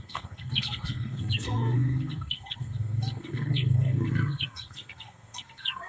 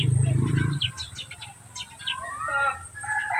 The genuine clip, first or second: second